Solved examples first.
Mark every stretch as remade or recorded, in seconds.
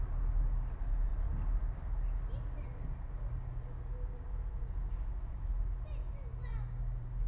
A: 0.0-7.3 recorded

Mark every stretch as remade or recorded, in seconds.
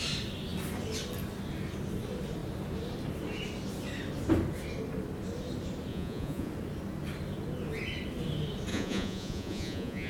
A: 0.0-5.9 recorded; 5.9-6.5 remade; 6.5-8.7 recorded; 8.7-10.1 remade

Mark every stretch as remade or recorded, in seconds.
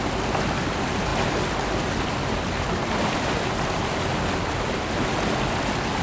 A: 0.0-6.0 recorded